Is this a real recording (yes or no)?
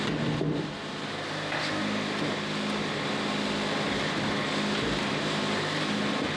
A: yes